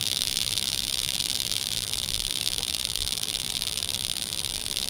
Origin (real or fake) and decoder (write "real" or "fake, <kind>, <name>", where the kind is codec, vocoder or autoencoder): fake, vocoder, BigVGAN v2